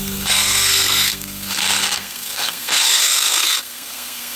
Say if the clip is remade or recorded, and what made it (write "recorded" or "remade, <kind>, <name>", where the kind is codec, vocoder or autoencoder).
remade, codec, SNAC